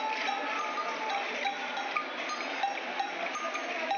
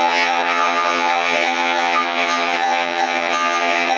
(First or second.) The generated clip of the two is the second